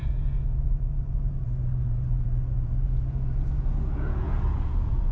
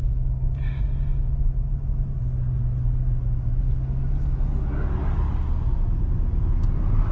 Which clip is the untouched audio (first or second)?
second